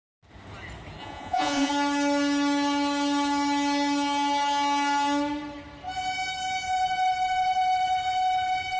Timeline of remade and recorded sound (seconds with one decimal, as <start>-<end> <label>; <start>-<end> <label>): 0.0-1.0 recorded; 1.0-1.7 remade; 1.7-8.8 recorded